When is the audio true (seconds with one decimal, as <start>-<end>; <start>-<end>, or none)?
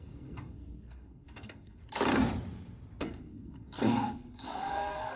1.8-3.0